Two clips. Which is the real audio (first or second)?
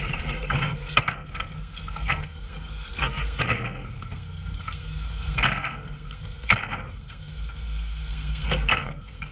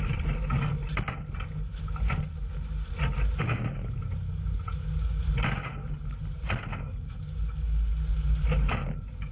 second